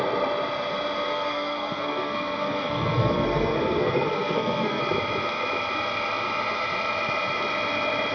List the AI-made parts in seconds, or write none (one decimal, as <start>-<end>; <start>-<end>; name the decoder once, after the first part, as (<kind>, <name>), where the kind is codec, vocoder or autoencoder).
1.1-4.8 (codec, SNAC)